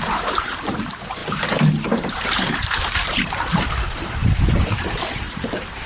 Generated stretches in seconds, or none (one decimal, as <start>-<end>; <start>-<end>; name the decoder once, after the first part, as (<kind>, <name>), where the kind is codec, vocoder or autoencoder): 0.0-5.9 (vocoder, BigVGAN v2)